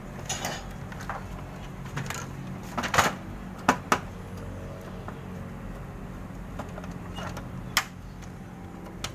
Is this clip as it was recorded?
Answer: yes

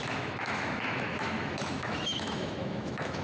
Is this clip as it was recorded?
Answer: no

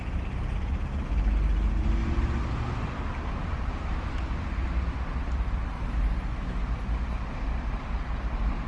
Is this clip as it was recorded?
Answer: yes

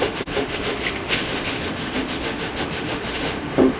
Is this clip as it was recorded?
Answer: no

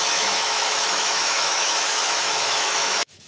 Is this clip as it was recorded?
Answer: no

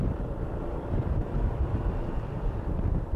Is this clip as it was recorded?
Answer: yes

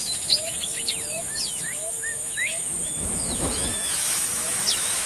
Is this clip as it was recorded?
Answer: no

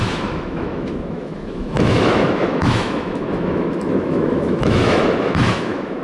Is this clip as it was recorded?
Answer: no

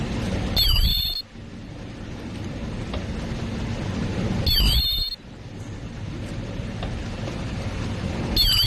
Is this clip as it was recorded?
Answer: yes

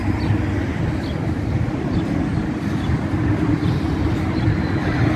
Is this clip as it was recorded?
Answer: yes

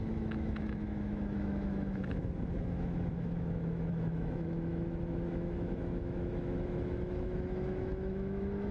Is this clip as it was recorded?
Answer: no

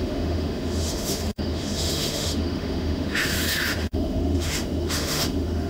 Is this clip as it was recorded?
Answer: no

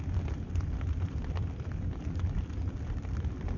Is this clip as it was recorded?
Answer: yes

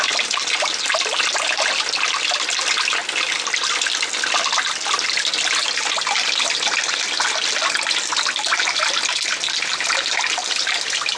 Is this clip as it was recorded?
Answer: yes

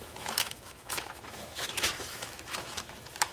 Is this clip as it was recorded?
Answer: no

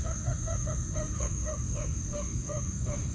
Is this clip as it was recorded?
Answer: no